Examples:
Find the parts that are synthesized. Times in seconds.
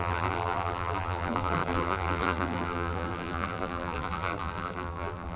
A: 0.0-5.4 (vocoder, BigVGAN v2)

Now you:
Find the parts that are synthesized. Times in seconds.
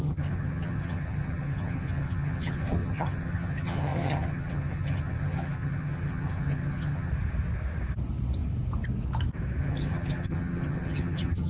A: 0.0-7.1 (vocoder, HiFi-GAN); 9.6-11.5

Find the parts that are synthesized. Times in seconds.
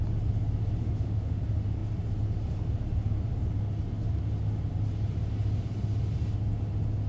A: 0.8-1.4 (autoencoder, DAC-VAE)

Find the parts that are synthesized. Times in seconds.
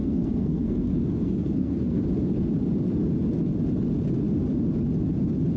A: 0.0-2.0 (codec, SNAC)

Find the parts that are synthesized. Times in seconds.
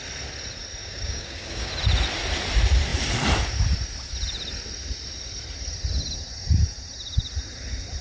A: 0.8-1.7 (codec, DAC)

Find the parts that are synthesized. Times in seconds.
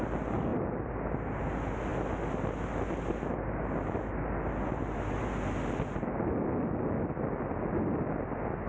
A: none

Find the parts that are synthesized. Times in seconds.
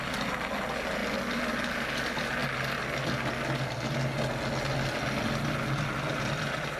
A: none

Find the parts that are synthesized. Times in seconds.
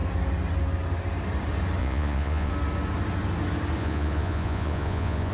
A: 1.8-2.5 (vocoder, Vocos); 3.8-5.3